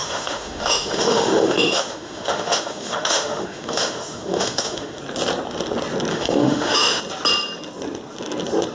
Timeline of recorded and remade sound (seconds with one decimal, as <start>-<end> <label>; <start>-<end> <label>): 0.0-5.0 remade; 5.0-6.1 recorded; 6.1-7.0 remade; 7.0-8.7 recorded